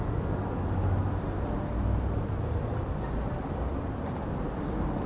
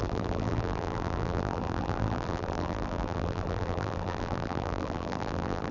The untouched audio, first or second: first